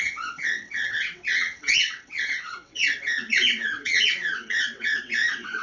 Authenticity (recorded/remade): remade